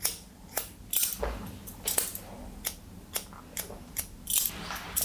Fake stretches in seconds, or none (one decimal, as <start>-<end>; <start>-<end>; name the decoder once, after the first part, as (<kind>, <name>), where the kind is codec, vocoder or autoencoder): none